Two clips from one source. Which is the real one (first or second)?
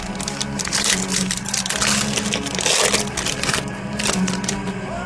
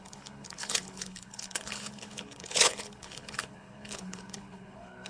first